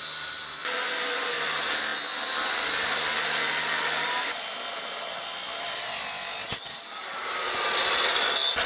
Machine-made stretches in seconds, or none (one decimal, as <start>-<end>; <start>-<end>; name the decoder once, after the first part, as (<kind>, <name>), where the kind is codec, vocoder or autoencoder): none